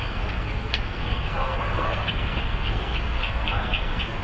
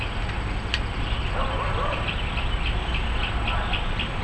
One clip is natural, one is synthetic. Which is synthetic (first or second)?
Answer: first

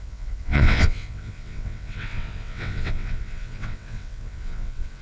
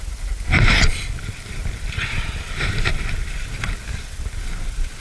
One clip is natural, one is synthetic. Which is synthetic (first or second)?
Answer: first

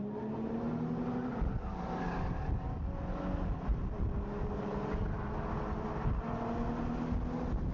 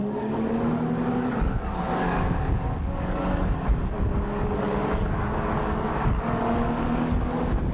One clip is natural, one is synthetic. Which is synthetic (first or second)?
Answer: second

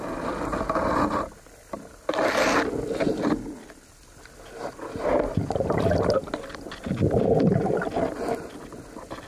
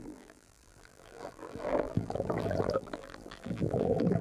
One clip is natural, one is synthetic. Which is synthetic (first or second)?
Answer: second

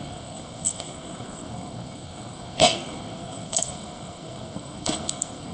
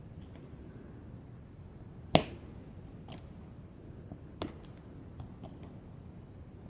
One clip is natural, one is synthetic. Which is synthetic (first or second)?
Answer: first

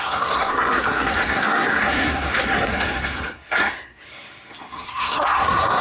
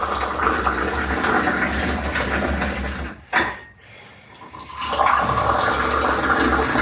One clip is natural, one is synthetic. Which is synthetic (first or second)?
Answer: first